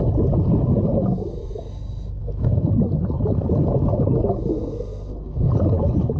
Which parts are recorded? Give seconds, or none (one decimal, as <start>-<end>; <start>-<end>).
0.0-2.2; 2.7-4.5; 5.5-6.2